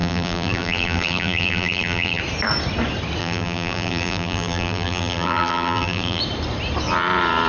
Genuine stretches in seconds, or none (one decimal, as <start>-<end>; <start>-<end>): 2.2-3.2; 6.2-7.5